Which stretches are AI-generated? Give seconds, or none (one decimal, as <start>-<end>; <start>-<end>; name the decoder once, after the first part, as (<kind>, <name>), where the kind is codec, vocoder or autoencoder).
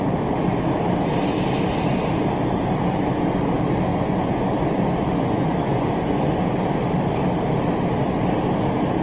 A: 3.9-6.3 (vocoder, Vocos)